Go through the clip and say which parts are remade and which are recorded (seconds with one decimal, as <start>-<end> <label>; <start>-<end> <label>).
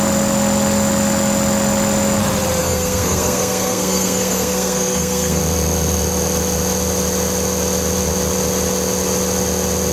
0.0-2.6 recorded; 2.6-5.4 remade; 5.4-9.9 recorded